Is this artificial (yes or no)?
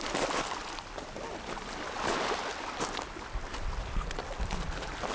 no